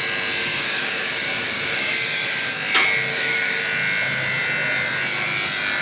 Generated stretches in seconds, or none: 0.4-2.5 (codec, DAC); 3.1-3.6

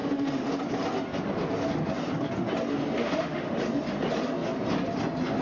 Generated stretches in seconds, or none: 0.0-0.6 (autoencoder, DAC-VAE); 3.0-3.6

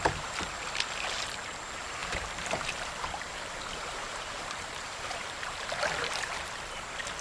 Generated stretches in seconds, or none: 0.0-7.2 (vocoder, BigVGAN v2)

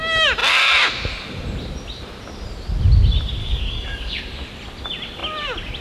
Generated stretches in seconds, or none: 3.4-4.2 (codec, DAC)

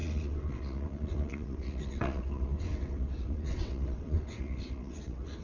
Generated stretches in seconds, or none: 0.0-5.4 (vocoder, WaveNeXt)